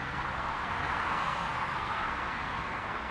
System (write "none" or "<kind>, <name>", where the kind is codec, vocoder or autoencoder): codec, SNAC